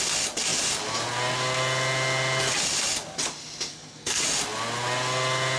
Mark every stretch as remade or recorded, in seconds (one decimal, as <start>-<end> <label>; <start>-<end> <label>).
0.0-3.7 recorded; 3.7-4.2 remade; 4.2-5.6 recorded